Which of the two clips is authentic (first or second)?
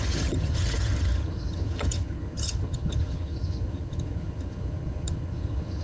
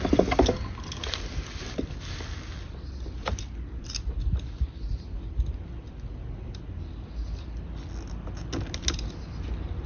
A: second